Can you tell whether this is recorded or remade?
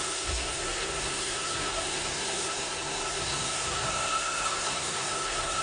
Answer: remade